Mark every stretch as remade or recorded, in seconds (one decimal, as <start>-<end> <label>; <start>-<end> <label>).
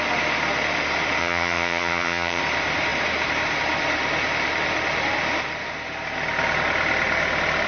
0.0-1.2 recorded; 1.2-2.4 remade; 2.4-7.7 recorded